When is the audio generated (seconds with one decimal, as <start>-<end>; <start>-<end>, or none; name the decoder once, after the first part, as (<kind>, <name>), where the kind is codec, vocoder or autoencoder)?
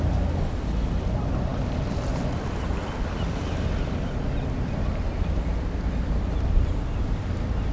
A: none